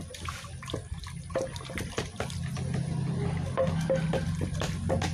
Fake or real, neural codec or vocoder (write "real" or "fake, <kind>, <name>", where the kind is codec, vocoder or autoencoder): real